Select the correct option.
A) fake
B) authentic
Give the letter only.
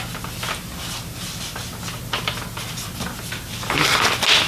B